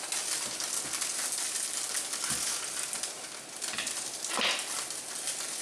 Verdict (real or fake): real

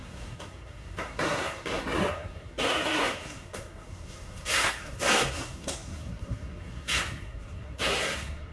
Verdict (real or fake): fake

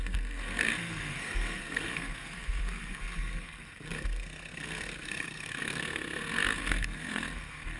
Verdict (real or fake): fake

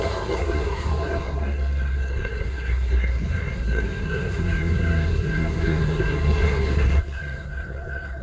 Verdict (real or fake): fake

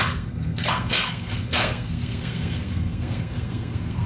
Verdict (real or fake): fake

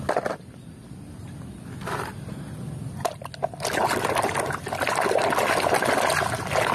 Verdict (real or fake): real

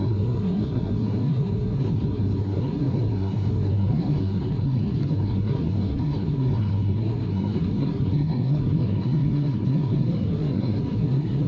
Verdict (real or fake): fake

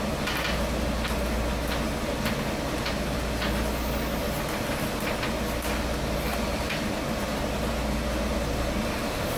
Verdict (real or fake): real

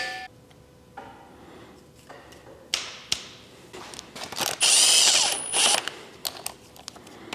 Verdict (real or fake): real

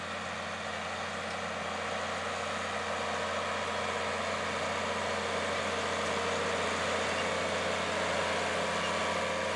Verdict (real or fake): real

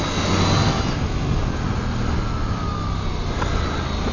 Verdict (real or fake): real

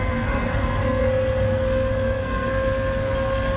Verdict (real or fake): fake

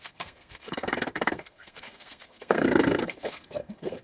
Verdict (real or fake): fake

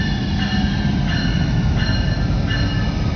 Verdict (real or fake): real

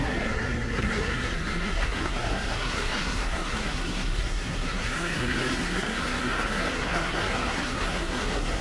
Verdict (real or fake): fake